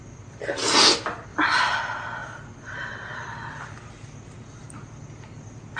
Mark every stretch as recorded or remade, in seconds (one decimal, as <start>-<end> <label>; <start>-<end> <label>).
0.0-1.3 recorded; 1.3-1.8 remade; 1.8-5.8 recorded

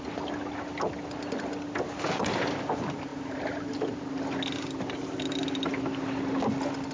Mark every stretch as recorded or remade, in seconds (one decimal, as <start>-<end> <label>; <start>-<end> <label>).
0.0-6.9 recorded

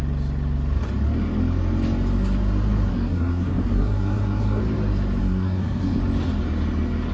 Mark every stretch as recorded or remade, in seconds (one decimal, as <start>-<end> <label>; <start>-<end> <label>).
0.0-2.9 recorded; 2.9-4.6 remade; 4.6-5.2 recorded; 5.2-6.0 remade; 6.0-7.1 recorded